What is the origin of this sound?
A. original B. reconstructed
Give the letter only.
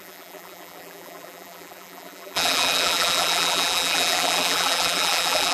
B